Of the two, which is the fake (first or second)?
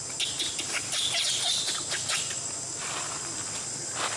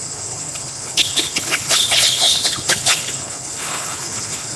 second